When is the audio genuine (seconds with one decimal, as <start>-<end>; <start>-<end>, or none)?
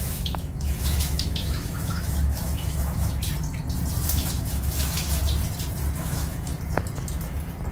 3.2-4.1; 5.2-6.0; 6.5-7.7